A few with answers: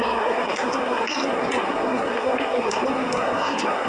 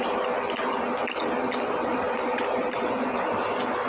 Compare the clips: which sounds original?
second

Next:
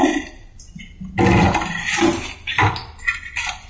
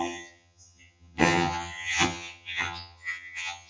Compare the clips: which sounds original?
first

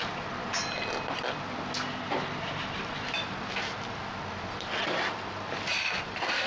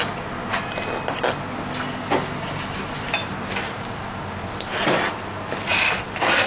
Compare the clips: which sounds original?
second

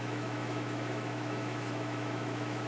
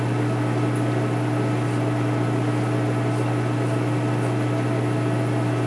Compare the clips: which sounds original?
second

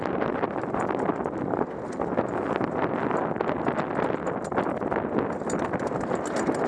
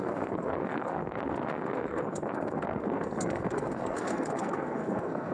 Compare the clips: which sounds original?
first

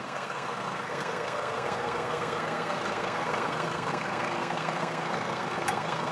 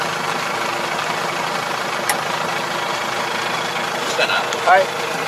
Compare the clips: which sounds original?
second